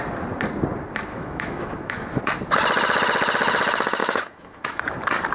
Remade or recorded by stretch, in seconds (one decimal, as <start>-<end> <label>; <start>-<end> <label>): 0.0-1.1 recorded; 1.1-2.2 remade; 2.2-4.0 recorded; 4.0-4.8 remade; 4.8-5.3 recorded

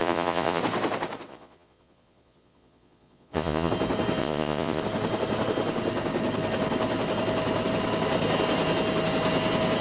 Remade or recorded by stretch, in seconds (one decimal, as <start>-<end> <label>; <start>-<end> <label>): 0.0-0.6 remade; 0.6-1.3 recorded; 1.3-3.7 remade; 3.7-4.2 recorded; 4.2-4.8 remade; 4.8-9.8 recorded